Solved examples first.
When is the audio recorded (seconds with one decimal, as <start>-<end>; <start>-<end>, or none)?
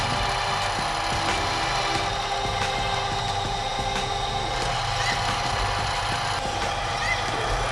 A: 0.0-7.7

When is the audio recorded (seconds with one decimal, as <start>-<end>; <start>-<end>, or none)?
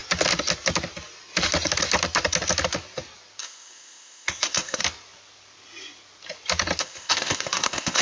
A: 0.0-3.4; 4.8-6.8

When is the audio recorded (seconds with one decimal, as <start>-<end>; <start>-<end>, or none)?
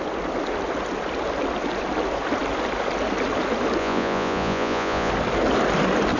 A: 0.0-3.8; 5.1-6.2